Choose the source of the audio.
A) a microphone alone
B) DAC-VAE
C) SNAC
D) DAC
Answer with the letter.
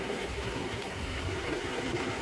C